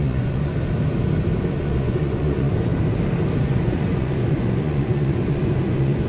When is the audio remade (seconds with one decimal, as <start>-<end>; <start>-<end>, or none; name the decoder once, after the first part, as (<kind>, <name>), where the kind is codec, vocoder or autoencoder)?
0.0-0.5 (vocoder, Vocos); 1.5-2.7; 3.4-6.1